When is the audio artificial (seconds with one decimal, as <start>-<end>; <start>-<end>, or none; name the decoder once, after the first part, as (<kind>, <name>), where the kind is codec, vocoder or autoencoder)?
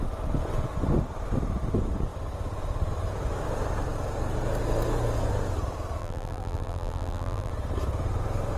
6.0-7.5 (vocoder, BigVGAN v2)